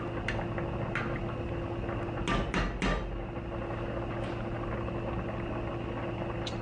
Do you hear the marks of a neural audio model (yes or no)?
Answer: no